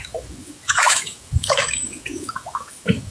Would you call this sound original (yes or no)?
no